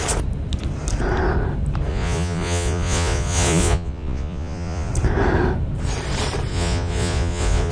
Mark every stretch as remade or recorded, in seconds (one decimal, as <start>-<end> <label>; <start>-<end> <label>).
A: 0.0-1.9 recorded; 1.9-4.9 remade; 4.9-6.5 recorded; 6.5-7.7 remade